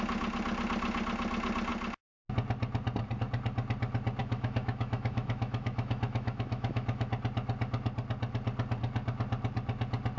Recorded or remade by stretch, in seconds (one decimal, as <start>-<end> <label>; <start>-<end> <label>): 0.0-4.2 recorded; 4.2-7.1 remade; 7.1-10.2 recorded